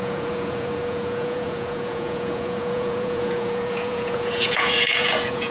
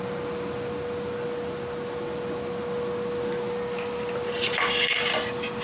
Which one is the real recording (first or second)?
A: second